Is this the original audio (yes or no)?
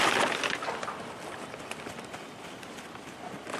yes